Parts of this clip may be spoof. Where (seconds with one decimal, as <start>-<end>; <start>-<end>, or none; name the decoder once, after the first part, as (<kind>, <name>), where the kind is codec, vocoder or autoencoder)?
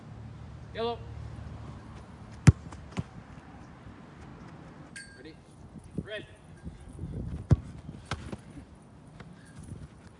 none